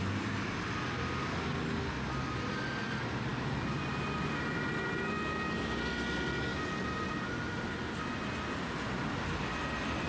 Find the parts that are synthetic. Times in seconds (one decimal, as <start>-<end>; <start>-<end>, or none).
none